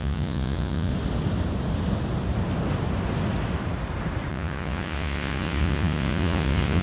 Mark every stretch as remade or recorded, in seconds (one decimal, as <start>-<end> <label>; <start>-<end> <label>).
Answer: 0.0-0.9 remade; 0.9-4.3 recorded; 4.3-6.8 remade